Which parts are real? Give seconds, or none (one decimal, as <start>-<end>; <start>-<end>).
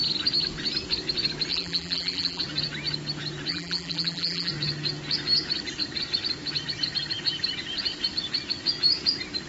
0.0-1.5; 2.4-3.5; 4.5-9.5